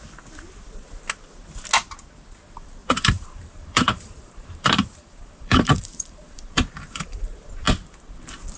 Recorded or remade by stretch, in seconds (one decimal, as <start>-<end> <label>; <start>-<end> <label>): 0.0-2.8 recorded; 2.8-7.5 remade; 7.5-8.6 recorded